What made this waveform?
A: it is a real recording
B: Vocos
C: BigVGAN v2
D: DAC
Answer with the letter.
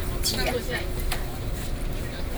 C